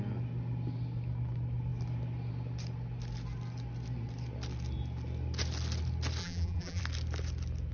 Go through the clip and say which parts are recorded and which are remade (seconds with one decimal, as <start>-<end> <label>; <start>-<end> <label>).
0.0-6.2 recorded; 6.2-6.8 remade; 6.8-7.7 recorded

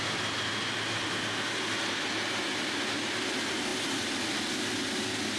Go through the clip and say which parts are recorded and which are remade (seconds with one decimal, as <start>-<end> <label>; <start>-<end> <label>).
0.0-5.4 recorded

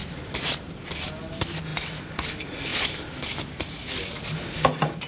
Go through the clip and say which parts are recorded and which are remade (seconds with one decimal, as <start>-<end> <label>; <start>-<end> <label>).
0.0-0.9 remade; 0.9-2.7 recorded; 2.7-4.3 remade; 4.3-5.1 recorded

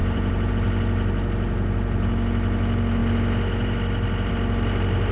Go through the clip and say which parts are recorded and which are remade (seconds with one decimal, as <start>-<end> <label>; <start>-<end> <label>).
0.0-0.5 remade; 0.5-5.1 recorded

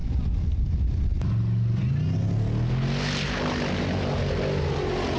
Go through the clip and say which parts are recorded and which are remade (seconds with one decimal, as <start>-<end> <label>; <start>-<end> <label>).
0.0-1.3 remade; 1.3-5.2 recorded

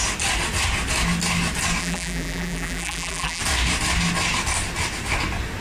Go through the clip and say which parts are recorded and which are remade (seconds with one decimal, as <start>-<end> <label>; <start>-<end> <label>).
0.0-1.8 recorded; 1.8-3.4 remade; 3.4-5.6 recorded

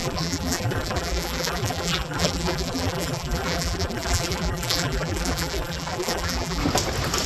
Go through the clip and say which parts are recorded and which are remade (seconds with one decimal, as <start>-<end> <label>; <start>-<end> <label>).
0.0-6.6 remade; 6.6-7.3 recorded